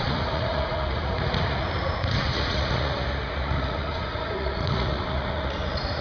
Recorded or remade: remade